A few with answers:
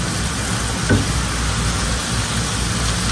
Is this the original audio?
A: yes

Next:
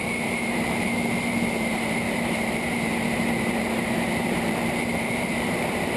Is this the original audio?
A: no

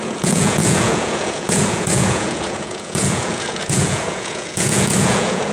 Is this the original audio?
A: no